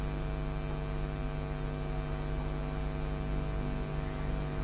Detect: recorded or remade recorded